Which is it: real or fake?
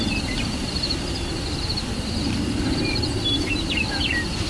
real